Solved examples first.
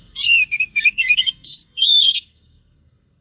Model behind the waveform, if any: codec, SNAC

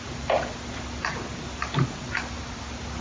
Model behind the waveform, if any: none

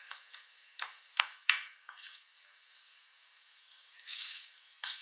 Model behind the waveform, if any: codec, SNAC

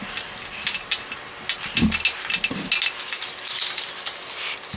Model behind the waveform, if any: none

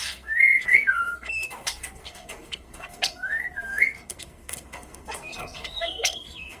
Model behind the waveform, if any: codec, SNAC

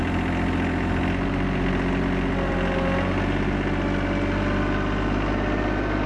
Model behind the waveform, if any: none